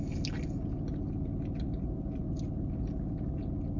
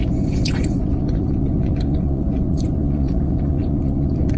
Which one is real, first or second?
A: first